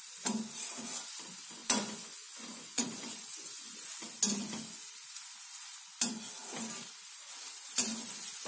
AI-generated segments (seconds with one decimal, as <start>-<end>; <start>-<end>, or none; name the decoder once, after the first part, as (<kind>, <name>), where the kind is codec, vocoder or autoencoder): 1.6-3.9 (vocoder, Vocos)